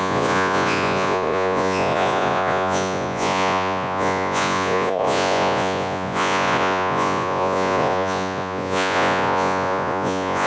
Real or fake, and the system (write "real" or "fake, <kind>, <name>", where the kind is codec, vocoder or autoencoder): fake, vocoder, Vocos